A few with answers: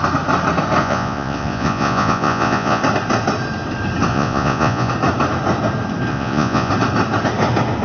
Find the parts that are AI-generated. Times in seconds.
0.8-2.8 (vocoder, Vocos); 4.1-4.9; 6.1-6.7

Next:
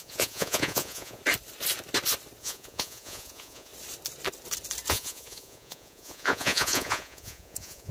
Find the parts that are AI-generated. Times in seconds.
0.0-1.2 (vocoder, Vocos); 2.4-3.7; 4.9-7.9